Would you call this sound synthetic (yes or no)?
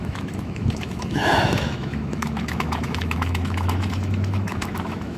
yes